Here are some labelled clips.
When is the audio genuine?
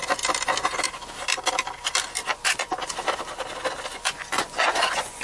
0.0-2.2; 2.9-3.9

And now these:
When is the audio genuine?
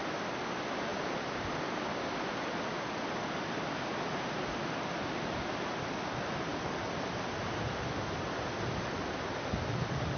0.0-10.2